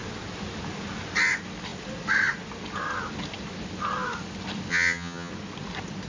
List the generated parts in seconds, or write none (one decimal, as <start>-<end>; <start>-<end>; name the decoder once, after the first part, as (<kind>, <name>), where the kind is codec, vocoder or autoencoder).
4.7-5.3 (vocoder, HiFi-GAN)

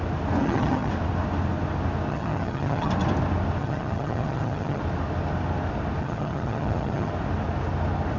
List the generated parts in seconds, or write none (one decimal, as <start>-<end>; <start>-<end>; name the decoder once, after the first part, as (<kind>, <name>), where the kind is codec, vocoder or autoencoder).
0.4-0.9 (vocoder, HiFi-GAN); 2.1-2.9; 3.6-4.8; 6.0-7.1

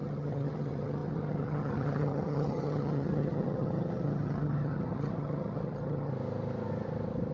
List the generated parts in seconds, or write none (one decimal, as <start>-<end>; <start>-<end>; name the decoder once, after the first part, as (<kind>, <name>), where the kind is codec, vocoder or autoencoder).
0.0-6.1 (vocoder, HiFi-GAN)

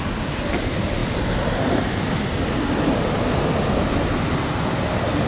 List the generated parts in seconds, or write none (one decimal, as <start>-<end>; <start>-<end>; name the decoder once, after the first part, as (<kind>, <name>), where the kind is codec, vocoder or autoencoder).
none

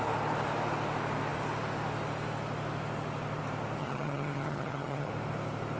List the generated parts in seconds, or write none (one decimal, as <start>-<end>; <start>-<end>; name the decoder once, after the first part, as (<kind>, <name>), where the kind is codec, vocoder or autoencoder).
3.8-5.1 (vocoder, HiFi-GAN)

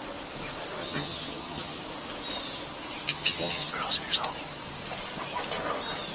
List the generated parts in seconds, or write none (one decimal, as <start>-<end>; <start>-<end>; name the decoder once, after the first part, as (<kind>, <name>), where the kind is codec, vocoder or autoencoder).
0.8-1.8 (vocoder, HiFi-GAN); 3.1-3.7